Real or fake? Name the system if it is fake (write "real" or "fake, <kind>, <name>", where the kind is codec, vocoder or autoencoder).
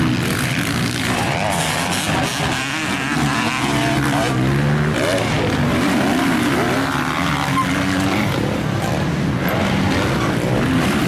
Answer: real